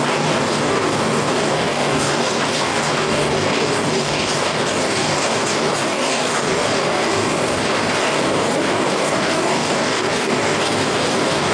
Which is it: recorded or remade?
remade